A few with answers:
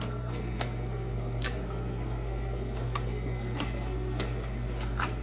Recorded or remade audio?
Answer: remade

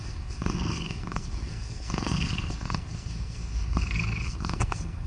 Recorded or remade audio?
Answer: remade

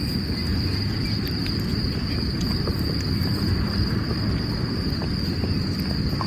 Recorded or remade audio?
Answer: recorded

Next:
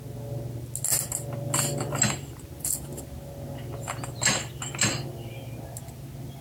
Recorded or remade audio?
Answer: recorded